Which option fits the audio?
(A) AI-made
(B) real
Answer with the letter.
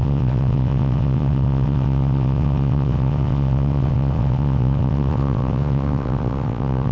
A